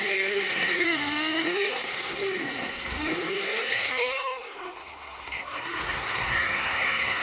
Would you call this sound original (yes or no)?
no